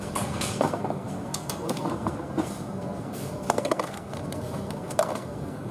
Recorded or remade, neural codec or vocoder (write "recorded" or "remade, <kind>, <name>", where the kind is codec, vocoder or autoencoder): remade, codec, SNAC